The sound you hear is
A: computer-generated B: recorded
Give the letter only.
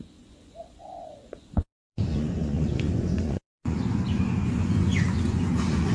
A